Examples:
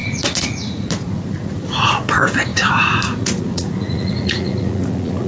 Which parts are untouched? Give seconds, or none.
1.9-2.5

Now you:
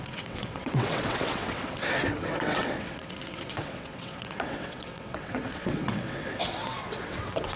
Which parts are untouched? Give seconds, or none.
none

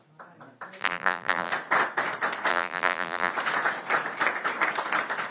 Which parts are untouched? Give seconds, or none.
0.0-0.8; 1.5-2.5; 3.3-5.3

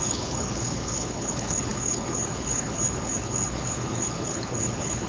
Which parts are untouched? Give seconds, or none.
none

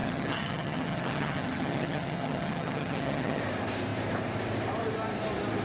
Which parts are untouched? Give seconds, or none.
3.4-5.6